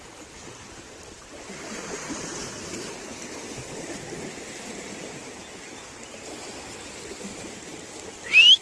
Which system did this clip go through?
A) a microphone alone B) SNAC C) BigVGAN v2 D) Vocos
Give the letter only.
A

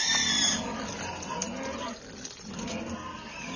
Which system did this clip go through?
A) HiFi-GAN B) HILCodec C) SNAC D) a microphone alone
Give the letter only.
D